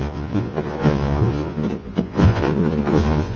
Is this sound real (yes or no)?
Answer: no